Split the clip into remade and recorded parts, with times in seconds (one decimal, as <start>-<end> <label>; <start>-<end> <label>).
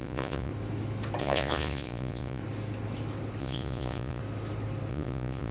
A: 0.0-0.5 remade; 0.5-1.2 recorded; 1.2-2.4 remade; 2.4-3.4 recorded; 3.4-4.2 remade; 4.2-4.9 recorded; 4.9-5.5 remade